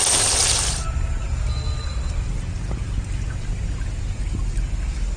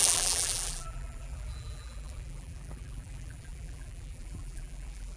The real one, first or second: first